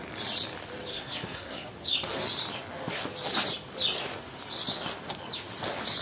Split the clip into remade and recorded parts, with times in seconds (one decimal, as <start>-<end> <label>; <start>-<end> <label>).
0.0-0.9 recorded; 0.9-1.7 remade; 1.7-6.0 recorded